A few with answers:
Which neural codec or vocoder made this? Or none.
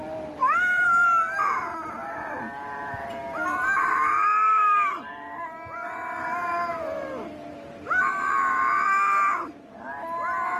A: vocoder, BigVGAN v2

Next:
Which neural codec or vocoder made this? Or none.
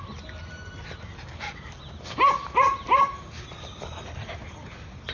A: none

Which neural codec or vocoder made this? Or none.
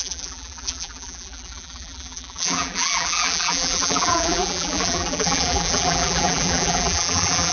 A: vocoder, BigVGAN v2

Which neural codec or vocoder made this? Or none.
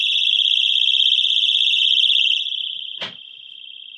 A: vocoder, BigVGAN v2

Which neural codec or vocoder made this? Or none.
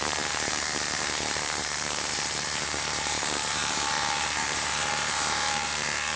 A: vocoder, BigVGAN v2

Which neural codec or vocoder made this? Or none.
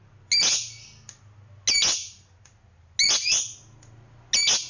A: none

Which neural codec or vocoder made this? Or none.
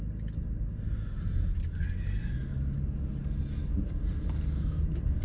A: none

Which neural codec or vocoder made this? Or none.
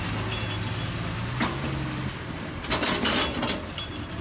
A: none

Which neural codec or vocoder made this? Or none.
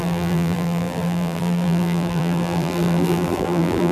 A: vocoder, BigVGAN v2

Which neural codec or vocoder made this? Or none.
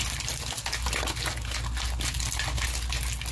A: none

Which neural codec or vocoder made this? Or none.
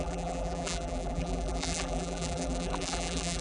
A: vocoder, BigVGAN v2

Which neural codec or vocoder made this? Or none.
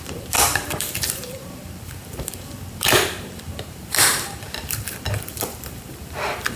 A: vocoder, BigVGAN v2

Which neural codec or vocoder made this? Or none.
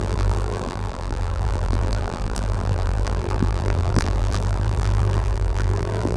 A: vocoder, BigVGAN v2